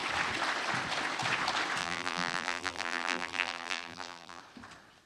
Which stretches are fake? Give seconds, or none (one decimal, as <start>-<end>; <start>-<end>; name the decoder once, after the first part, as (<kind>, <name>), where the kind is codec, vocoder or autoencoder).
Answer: 1.8-4.4 (vocoder, BigVGAN v2)